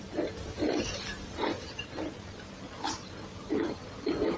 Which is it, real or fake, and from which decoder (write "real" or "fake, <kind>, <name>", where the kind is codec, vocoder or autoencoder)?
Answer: fake, vocoder, BigVGAN v2